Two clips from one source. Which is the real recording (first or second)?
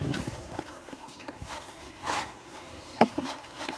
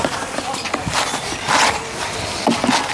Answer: second